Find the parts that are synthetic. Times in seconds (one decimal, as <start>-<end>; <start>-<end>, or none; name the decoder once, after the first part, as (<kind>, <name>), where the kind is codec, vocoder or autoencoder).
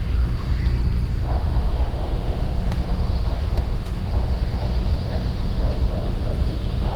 0.0-0.6 (autoencoder, DAC-VAE); 1.1-7.0